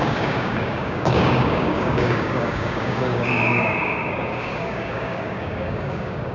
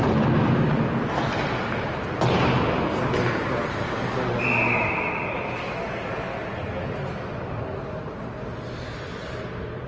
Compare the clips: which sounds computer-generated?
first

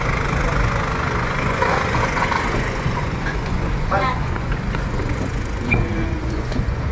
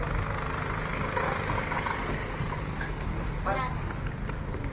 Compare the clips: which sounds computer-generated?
first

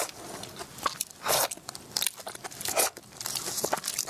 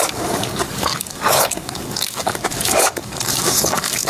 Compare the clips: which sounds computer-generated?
second